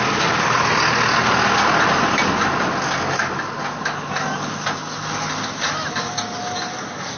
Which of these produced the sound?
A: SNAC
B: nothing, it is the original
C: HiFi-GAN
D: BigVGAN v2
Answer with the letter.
B